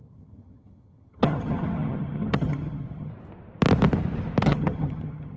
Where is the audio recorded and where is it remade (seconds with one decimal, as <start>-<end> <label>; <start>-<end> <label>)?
0.0-3.1 remade; 3.1-4.4 recorded; 4.4-5.4 remade